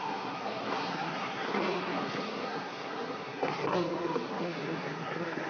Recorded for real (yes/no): no